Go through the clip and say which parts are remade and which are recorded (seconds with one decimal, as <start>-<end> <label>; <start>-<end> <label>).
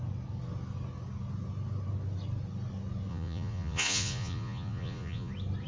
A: 0.0-3.1 recorded; 3.1-5.3 remade; 5.3-5.7 recorded